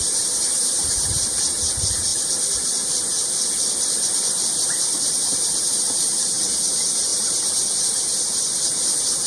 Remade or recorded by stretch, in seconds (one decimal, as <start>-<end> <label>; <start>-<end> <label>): 0.0-2.1 remade; 2.1-4.5 recorded; 4.5-9.3 remade